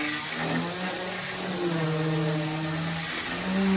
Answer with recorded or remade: recorded